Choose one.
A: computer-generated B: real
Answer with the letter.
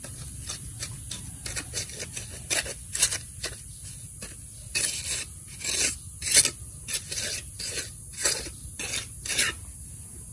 B